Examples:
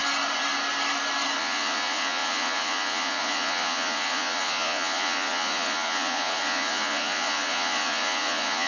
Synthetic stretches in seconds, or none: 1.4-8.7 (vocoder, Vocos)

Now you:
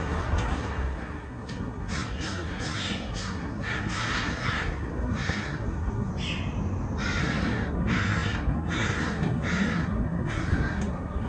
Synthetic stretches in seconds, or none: 0.0-6.1 (codec, SNAC); 7.2-11.3

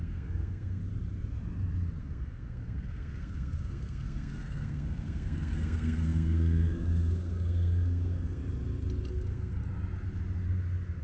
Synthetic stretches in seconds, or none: 0.0-0.8 (codec, SNAC); 2.0-8.4; 9.1-9.6

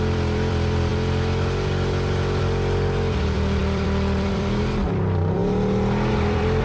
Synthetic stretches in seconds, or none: 0.0-0.9 (vocoder, BigVGAN v2); 2.4-5.4; 6.1-6.6

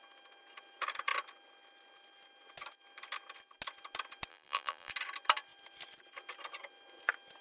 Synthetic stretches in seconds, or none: 4.3-4.9 (vocoder, BigVGAN v2)